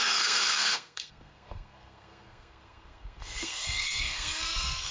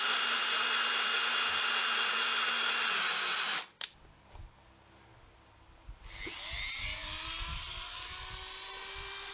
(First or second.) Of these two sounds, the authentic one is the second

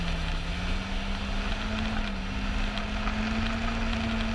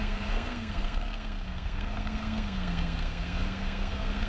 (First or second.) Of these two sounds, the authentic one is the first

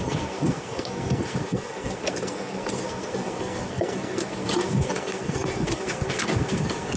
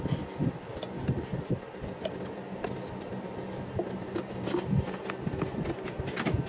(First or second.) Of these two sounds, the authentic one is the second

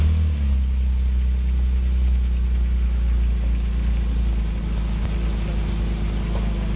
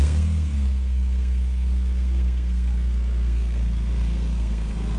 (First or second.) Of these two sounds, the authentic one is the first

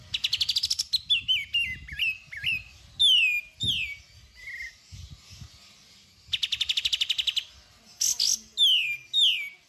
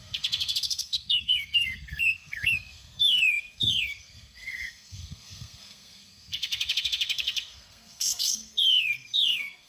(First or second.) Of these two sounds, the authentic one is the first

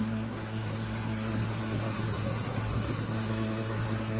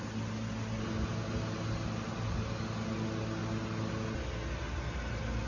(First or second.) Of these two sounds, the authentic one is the second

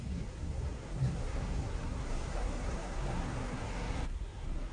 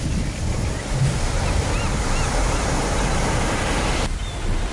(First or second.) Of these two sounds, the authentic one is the second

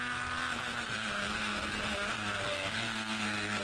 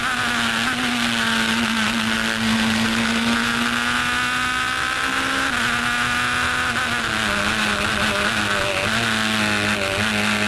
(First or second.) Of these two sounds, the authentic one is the second